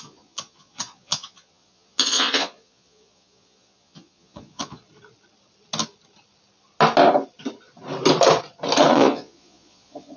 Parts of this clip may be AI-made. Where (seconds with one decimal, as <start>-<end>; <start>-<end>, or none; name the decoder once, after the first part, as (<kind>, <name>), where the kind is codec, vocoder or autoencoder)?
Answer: 0.0-4.8 (vocoder, Vocos); 8.9-10.2